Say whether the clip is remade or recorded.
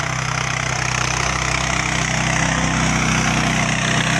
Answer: recorded